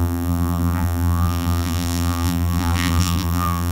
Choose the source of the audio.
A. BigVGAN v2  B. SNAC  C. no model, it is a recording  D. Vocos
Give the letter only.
A